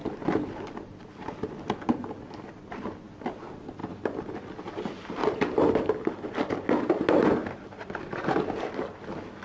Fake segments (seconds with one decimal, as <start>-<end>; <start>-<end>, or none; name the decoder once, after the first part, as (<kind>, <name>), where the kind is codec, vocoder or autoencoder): 3.8-4.6 (vocoder, BigVGAN v2); 5.2-6.5; 7.4-7.9

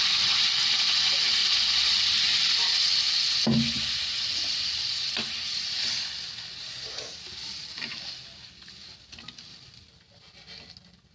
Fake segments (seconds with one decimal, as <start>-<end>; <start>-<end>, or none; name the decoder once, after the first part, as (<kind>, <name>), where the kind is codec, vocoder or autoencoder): 0.0-6.7 (vocoder, BigVGAN v2); 7.3-11.1

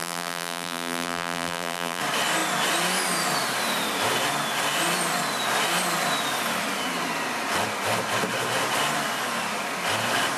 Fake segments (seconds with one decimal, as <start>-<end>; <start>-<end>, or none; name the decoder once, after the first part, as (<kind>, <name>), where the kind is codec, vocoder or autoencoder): 0.0-2.0 (vocoder, BigVGAN v2)

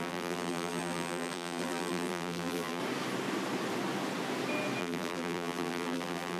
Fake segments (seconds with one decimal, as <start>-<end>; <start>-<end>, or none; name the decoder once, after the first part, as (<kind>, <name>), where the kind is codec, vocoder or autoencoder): 0.0-2.8 (vocoder, BigVGAN v2); 4.8-6.4

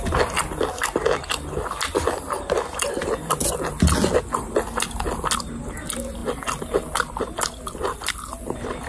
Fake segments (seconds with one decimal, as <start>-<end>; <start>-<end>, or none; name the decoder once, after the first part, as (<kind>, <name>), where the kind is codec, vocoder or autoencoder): none